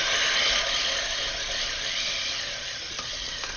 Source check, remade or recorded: recorded